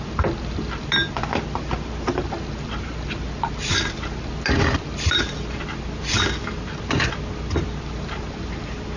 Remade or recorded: recorded